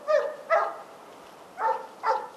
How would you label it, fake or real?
real